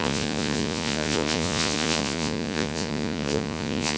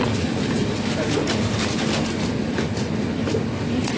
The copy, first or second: first